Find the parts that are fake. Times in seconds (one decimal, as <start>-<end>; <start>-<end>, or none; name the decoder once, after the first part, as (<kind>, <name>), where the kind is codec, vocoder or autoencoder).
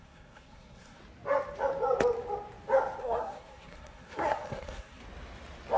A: 0.0-1.0 (codec, SNAC); 3.0-5.0